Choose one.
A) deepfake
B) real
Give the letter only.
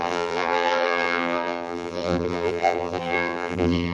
A